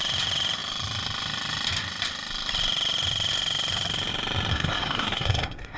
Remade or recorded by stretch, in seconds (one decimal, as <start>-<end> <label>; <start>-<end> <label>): 0.0-4.5 recorded; 4.5-5.8 remade